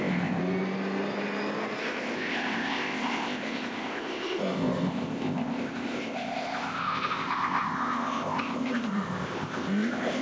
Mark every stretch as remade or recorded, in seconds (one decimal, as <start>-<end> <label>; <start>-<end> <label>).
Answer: 0.0-0.4 remade; 0.4-1.8 recorded; 1.8-10.2 remade

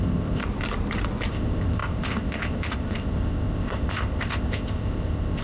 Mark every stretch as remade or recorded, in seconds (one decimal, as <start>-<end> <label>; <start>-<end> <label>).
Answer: 0.0-0.4 remade; 0.4-1.3 recorded; 1.3-5.4 remade

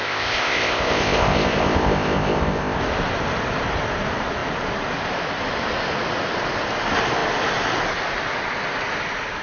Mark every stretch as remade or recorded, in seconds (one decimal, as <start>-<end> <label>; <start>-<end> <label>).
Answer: 0.0-2.8 remade; 2.8-9.4 recorded

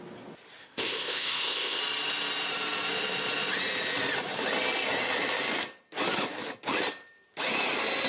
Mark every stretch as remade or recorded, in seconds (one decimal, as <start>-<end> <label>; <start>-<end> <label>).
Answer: 0.0-0.6 recorded; 0.6-1.8 remade; 1.8-8.1 recorded

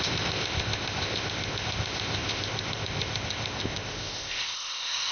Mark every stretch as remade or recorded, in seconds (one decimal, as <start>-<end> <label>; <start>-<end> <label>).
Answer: 0.0-5.1 remade

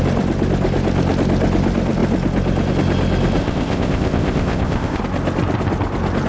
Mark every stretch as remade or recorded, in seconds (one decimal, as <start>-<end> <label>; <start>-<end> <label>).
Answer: 0.0-3.4 recorded; 3.4-5.0 remade; 5.0-6.3 recorded

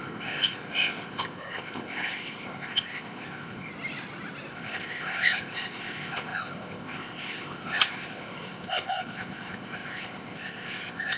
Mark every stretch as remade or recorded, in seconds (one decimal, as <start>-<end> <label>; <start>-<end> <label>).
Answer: 0.0-3.7 remade; 3.7-4.5 recorded; 4.5-11.2 remade